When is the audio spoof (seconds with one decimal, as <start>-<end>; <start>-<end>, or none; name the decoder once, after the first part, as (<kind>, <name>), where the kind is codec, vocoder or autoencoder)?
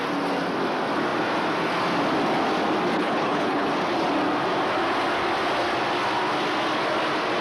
3.0-3.7 (codec, HILCodec)